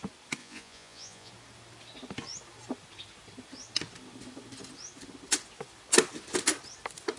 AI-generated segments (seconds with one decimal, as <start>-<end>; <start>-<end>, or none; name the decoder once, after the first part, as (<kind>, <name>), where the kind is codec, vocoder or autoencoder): 0.4-1.3 (vocoder, Vocos)